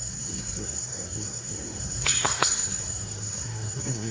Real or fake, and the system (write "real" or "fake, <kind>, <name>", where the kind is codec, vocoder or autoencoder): fake, codec, SNAC